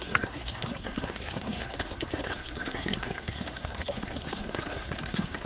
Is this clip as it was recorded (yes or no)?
no